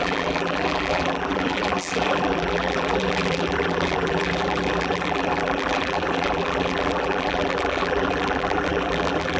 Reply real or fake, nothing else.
fake